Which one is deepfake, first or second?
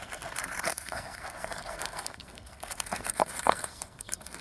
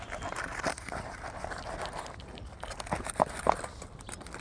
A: first